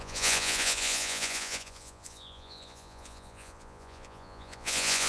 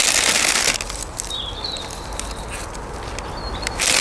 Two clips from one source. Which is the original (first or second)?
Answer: second